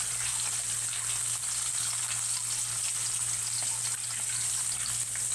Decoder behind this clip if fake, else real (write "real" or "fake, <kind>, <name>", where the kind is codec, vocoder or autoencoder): real